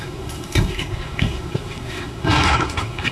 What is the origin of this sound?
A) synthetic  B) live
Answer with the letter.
A